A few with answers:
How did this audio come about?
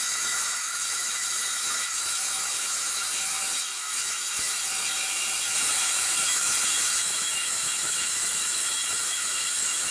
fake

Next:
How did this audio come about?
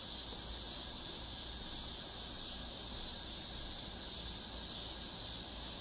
real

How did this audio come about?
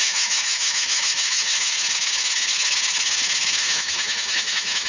fake